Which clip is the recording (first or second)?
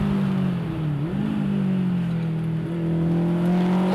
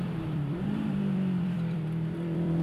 first